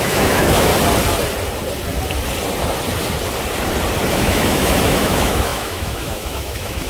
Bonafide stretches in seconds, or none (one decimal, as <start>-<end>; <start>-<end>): 0.7-4.1